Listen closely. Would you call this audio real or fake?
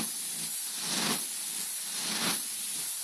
real